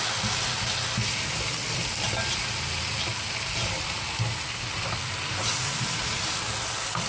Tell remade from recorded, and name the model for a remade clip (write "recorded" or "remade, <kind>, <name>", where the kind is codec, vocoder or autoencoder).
recorded